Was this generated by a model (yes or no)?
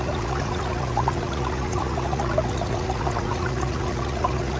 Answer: yes